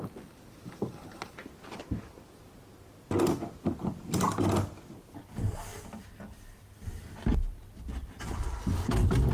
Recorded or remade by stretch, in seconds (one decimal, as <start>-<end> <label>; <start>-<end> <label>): 0.0-9.3 recorded